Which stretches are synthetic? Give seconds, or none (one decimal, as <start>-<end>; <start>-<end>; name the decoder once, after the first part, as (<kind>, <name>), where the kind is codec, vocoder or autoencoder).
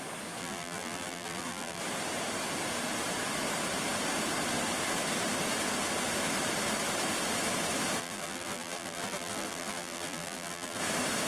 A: 0.4-1.8 (vocoder, BigVGAN v2); 8.0-10.8